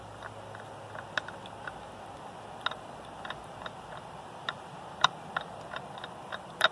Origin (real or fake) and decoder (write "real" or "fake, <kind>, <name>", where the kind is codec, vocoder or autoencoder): real